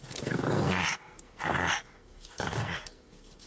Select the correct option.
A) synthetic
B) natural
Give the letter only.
A